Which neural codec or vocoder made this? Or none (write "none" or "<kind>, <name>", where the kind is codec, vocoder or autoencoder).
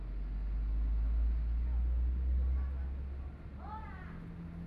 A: none